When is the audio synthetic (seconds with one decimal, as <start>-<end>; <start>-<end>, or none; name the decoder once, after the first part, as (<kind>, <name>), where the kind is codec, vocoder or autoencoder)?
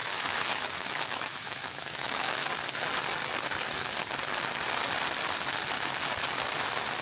0.0-2.5 (autoencoder, DAC-VAE)